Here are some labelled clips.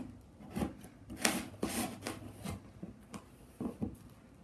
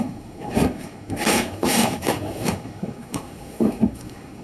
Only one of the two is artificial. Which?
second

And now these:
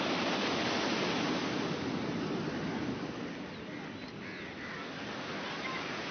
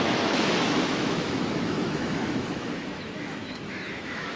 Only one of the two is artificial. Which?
second